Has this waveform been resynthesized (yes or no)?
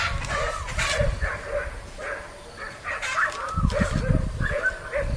no